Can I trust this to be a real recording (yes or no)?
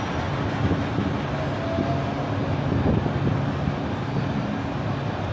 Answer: yes